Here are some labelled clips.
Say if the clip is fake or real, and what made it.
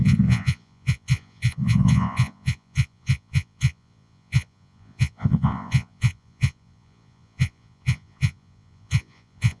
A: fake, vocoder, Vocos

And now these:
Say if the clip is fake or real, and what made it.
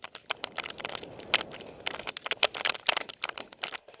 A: real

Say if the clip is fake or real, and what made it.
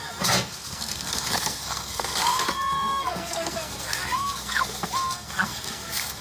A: fake, codec, SNAC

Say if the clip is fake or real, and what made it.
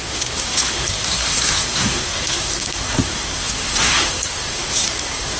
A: fake, codec, SNAC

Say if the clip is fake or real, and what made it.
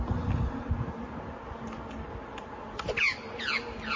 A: real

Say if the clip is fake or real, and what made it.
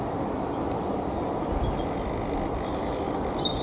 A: real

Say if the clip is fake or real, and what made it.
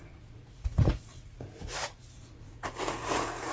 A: fake, vocoder, Vocos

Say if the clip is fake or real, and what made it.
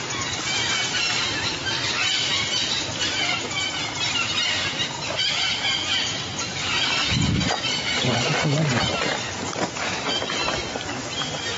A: real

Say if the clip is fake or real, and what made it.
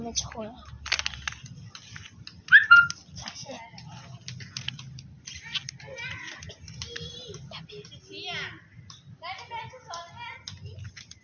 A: real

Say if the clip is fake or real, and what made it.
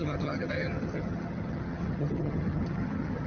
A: fake, vocoder, HiFi-GAN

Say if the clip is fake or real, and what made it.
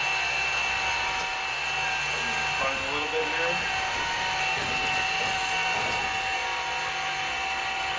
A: real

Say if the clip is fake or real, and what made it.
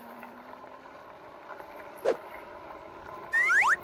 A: fake, vocoder, BigVGAN v2